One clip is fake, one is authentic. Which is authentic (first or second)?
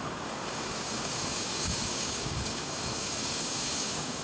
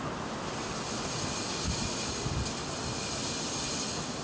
second